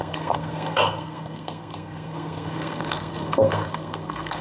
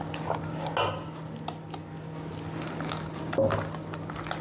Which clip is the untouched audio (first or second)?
second